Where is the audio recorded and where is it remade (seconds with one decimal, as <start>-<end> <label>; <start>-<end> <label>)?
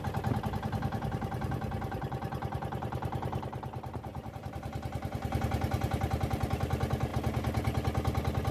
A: 0.0-4.1 recorded; 4.1-5.4 remade; 5.4-8.5 recorded